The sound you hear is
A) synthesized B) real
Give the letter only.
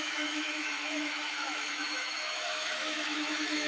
A